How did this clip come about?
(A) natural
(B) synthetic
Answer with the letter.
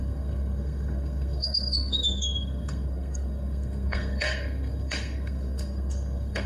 B